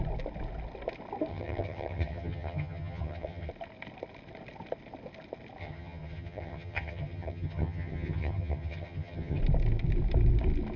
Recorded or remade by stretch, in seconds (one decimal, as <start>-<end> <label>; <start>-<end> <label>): 0.0-1.3 recorded; 1.3-3.5 remade; 3.5-5.6 recorded; 5.6-9.4 remade; 9.4-10.8 recorded